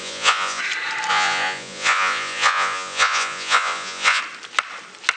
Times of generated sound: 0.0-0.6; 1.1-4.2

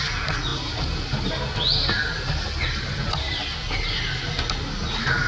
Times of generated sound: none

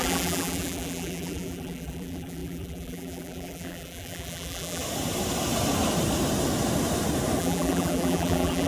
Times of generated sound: 0.0-4.8; 7.4-8.7